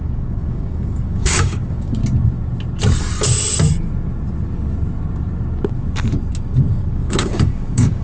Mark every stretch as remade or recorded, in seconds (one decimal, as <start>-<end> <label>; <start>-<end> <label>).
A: 0.0-2.0 remade; 2.0-6.7 recorded; 6.7-8.0 remade